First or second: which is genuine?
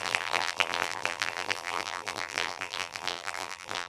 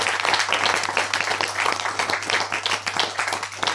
second